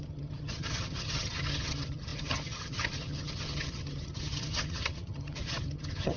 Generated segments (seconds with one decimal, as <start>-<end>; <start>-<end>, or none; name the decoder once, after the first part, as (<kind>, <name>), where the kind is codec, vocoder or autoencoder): 0.0-6.2 (vocoder, HiFi-GAN)